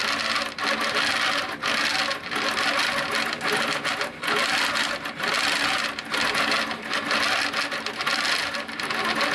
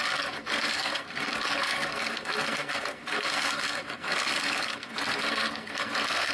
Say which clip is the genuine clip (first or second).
first